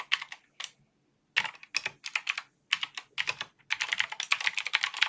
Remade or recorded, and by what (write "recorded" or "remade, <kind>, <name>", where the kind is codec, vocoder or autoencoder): recorded